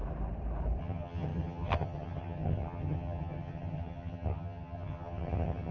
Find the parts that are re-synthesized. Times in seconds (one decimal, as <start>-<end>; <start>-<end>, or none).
0.8-5.7

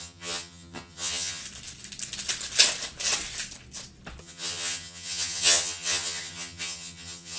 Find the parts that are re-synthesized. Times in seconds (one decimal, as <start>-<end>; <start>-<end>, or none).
0.0-1.4; 4.2-7.4

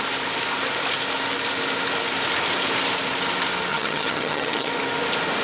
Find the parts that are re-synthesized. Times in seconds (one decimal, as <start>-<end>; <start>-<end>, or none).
3.7-4.7

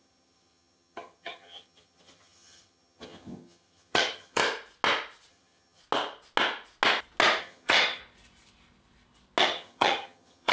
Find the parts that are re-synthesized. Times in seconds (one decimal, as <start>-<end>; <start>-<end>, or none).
0.0-4.4; 5.3-5.8; 7.4-8.0; 9.4-10.5

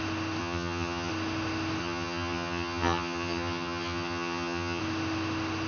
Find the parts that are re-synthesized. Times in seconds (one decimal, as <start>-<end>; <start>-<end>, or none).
0.4-1.1; 1.8-4.8

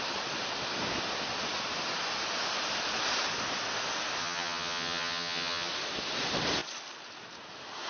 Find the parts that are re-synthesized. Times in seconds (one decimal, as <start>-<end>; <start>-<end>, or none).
4.2-5.7